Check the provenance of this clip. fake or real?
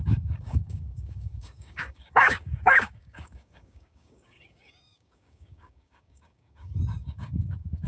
fake